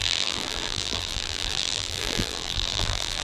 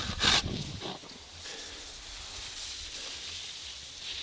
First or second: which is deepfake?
first